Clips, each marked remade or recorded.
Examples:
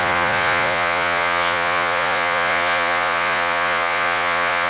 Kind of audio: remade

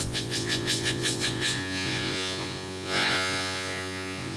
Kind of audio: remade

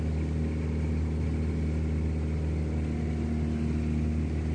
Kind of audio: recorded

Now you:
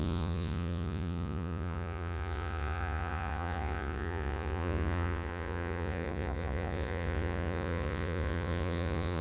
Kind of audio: remade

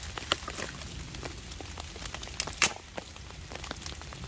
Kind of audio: recorded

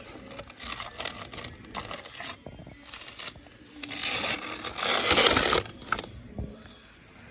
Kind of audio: recorded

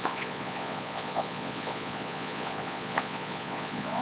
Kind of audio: remade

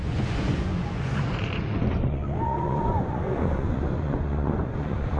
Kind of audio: remade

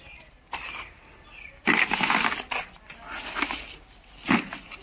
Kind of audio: recorded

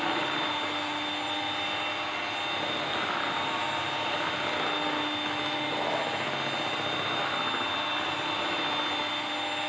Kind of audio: recorded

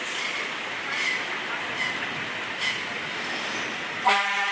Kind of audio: recorded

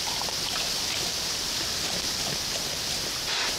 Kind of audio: recorded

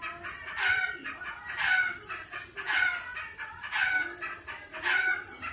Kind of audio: recorded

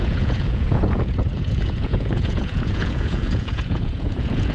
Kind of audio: remade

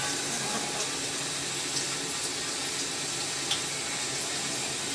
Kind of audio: recorded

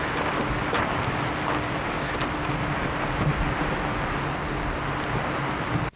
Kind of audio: recorded